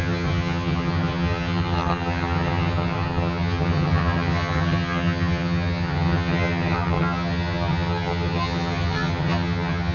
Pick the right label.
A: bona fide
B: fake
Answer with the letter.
B